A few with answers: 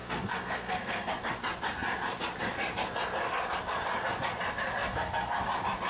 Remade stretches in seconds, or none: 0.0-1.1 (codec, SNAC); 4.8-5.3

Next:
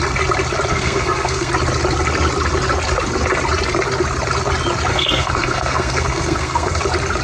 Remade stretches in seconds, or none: 0.7-1.5 (codec, SNAC); 4.9-6.8

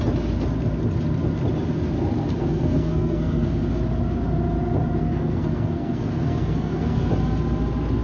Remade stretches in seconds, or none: 2.3-3.6 (codec, SNAC); 5.0-7.1

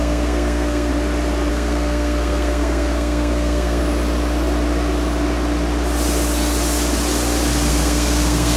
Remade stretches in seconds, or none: 0.0-0.9 (codec, SNAC); 1.5-3.8; 7.7-8.6

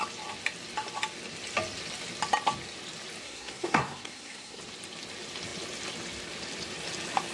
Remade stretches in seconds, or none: 3.2-4.6 (codec, SNAC)